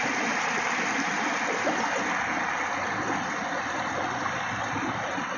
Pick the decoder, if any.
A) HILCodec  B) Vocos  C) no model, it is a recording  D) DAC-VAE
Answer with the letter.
C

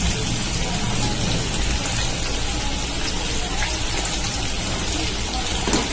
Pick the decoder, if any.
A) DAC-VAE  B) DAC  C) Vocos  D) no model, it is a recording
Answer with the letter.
D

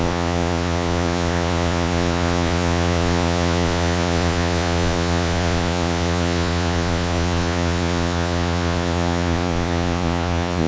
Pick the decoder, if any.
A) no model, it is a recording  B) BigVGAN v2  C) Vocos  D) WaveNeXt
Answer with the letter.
C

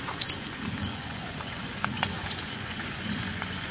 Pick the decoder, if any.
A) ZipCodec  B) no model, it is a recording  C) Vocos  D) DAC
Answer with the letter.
C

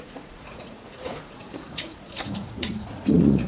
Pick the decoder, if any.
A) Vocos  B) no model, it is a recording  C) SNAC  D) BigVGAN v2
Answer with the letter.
A